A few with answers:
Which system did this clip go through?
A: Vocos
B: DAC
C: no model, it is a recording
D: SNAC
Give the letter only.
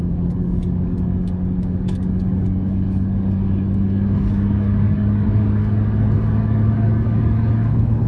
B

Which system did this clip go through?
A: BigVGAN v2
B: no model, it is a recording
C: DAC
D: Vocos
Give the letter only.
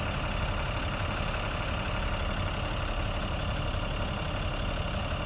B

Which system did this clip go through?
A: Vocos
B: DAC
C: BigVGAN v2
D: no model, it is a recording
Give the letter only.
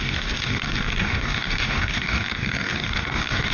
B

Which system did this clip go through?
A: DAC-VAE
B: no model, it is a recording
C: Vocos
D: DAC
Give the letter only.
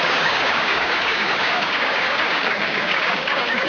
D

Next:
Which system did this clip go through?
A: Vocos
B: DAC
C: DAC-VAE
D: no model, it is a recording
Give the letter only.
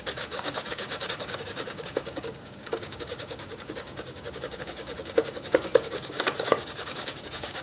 B